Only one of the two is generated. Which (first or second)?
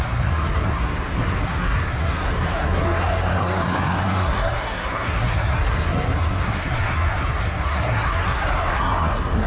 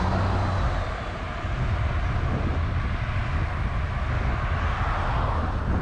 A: first